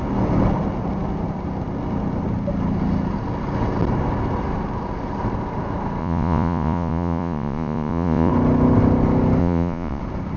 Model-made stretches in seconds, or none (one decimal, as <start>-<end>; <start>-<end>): 6.0-8.3; 9.4-10.0